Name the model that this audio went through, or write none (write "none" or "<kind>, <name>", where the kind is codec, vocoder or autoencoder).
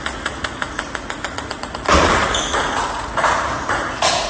vocoder, Vocos